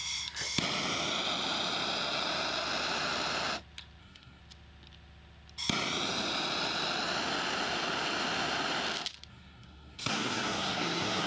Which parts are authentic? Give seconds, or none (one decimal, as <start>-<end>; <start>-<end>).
0.0-4.0; 4.4-9.3